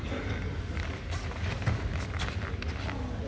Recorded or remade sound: recorded